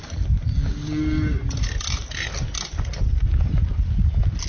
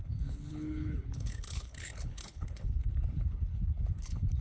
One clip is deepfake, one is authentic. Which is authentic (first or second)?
first